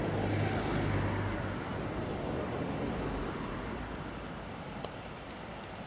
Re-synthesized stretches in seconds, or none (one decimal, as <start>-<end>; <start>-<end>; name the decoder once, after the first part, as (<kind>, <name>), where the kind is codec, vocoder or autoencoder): none